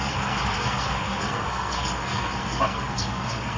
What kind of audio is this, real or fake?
fake